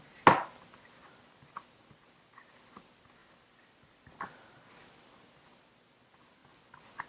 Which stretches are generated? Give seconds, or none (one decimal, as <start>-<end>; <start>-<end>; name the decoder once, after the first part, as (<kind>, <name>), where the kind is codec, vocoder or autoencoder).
none